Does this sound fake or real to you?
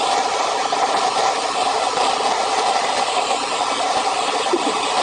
real